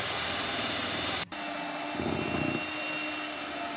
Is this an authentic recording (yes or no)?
yes